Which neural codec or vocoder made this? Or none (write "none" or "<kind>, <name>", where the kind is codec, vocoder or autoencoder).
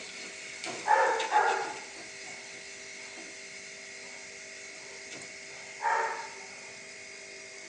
none